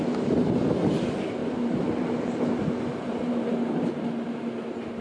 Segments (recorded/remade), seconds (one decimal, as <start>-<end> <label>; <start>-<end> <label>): 0.0-1.4 recorded; 1.4-3.9 remade; 3.9-5.0 recorded